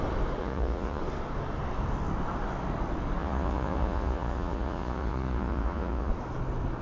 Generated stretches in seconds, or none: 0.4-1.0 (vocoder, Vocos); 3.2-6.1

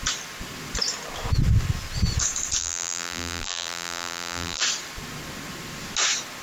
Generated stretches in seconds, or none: 2.6-4.6 (vocoder, BigVGAN v2)

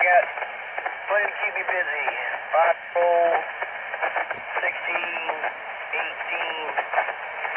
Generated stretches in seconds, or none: 4.2-4.8 (vocoder, BigVGAN v2)

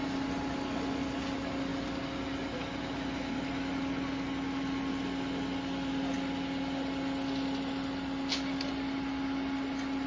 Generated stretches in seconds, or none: none

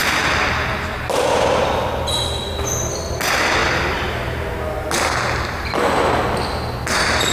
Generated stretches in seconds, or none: none

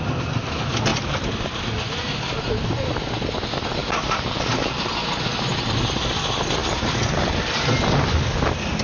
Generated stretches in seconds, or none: 0.9-2.1 (vocoder, BigVGAN v2); 3.8-4.9; 6.6-7.4